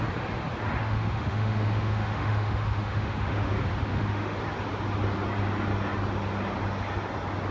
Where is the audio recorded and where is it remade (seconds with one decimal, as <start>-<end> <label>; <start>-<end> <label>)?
0.0-0.8 recorded; 0.8-3.5 remade; 3.5-3.9 recorded; 3.9-4.4 remade; 4.4-7.5 recorded